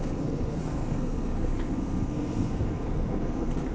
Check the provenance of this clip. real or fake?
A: fake